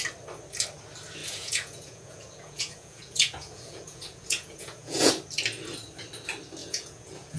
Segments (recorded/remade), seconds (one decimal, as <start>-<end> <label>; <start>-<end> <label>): 0.0-1.2 recorded; 1.2-5.1 remade; 5.1-6.6 recorded; 6.6-7.4 remade

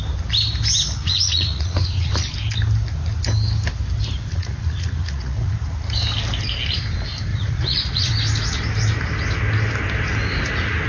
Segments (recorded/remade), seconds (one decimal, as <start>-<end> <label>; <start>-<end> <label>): 0.0-1.0 recorded; 1.0-2.3 remade; 2.3-4.3 recorded; 4.3-5.5 remade; 5.5-7.3 recorded; 7.3-8.1 remade; 8.1-10.9 recorded

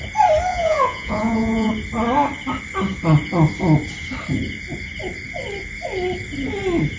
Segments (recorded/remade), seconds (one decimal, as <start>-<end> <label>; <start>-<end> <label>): 0.0-0.5 recorded; 0.5-1.7 remade; 1.7-7.0 recorded

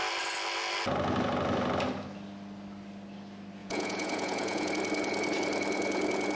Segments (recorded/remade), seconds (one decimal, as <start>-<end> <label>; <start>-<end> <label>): 0.0-3.6 recorded; 3.6-4.7 remade; 4.7-6.4 recorded

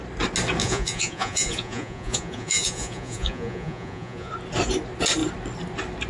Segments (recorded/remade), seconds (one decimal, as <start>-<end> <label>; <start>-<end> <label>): 0.0-0.6 recorded; 0.6-4.3 remade; 4.3-6.1 recorded

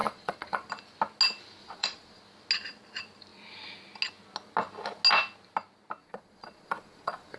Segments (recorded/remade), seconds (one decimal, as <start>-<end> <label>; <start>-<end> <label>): 0.0-0.7 remade; 0.7-1.6 recorded; 1.6-2.2 remade; 2.2-6.0 recorded; 6.0-7.4 remade

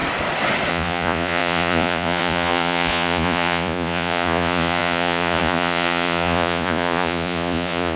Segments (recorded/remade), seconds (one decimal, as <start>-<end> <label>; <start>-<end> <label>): 0.0-0.7 recorded; 0.7-8.0 remade

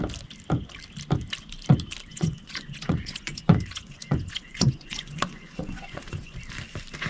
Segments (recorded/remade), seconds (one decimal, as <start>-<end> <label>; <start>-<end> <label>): 0.0-2.1 recorded; 2.1-6.4 remade; 6.4-7.1 recorded